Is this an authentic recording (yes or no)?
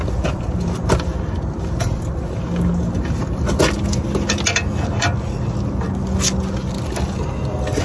yes